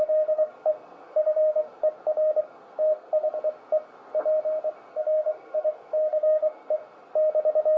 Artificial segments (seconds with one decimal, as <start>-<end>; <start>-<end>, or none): 0.0-1.8; 2.4-3.3; 4.9-6.8